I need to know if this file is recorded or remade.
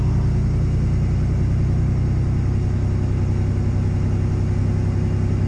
recorded